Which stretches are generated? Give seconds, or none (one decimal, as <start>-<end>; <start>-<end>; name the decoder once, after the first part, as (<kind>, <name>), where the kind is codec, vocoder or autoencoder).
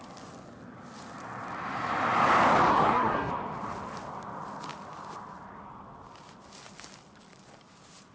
2.7-3.3 (codec, SNAC)